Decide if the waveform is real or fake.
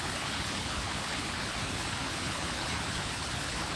fake